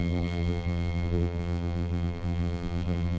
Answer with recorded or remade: remade